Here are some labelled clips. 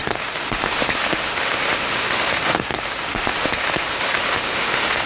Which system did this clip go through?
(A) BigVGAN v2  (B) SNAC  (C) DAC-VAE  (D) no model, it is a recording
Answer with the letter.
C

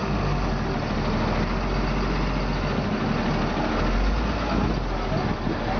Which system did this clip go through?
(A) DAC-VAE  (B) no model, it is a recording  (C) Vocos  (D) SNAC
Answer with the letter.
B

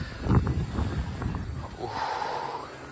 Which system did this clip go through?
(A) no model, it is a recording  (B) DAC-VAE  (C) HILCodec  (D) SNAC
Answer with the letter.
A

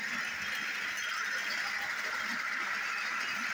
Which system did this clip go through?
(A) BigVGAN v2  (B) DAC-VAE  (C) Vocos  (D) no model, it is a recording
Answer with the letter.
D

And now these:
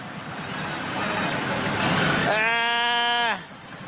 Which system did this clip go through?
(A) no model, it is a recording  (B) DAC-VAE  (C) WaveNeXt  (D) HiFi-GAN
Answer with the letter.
A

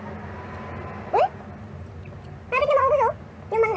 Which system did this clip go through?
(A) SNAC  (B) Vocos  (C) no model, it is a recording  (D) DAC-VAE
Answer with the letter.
C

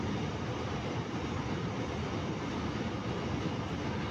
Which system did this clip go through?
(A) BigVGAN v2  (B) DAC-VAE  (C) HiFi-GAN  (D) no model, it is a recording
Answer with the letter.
D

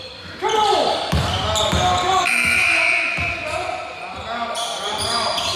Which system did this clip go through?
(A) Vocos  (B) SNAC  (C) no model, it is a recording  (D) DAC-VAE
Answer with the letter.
C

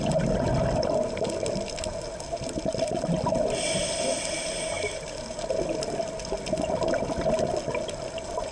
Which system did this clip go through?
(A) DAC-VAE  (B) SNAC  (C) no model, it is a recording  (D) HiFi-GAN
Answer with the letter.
C